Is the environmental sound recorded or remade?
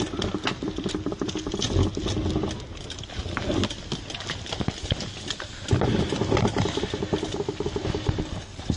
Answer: recorded